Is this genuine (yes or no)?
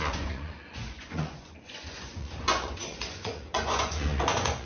no